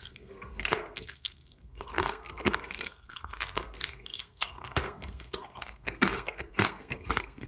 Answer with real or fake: fake